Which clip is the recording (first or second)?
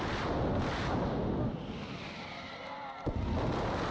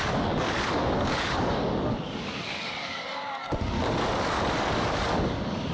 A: first